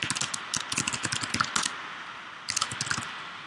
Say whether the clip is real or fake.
real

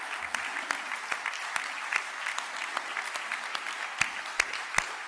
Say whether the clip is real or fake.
real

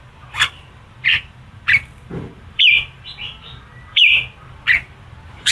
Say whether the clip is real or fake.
fake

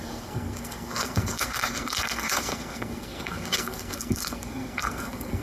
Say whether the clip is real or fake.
fake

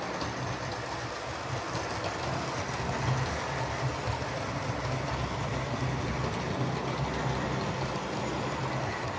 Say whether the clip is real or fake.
real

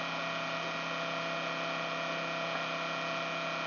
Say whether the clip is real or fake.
real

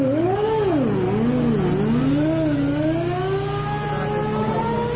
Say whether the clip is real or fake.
real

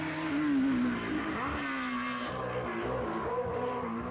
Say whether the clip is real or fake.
real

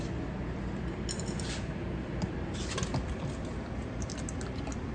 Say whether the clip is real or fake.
real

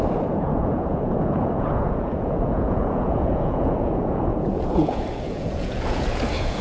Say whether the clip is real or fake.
fake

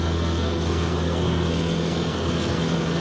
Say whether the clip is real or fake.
fake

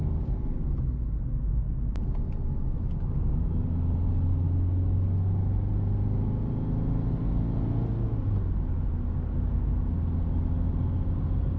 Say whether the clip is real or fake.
real